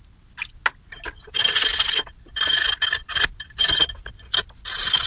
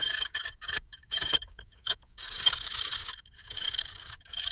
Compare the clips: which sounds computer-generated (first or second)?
second